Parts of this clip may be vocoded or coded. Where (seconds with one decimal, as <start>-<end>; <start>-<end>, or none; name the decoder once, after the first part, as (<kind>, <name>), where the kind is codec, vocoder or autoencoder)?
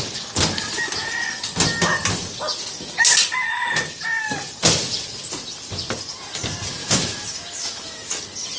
6.8-8.2 (autoencoder, DAC-VAE)